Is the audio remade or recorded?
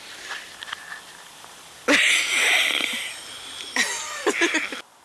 recorded